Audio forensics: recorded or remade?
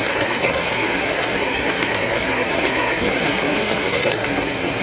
remade